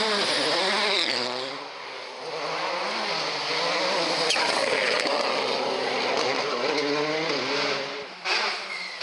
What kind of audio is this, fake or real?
real